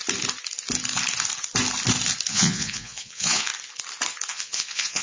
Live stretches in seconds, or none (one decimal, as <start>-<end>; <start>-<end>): 0.0-2.3; 3.5-4.3